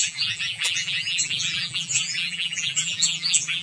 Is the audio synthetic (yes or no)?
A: yes